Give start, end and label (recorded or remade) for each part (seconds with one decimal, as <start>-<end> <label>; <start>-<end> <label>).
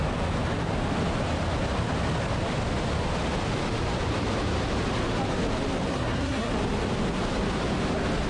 0.0-5.9 recorded; 5.9-6.5 remade; 6.5-8.3 recorded